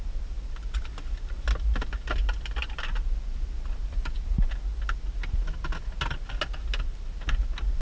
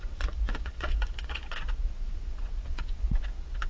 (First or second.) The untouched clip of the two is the first